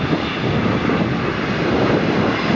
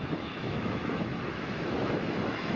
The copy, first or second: second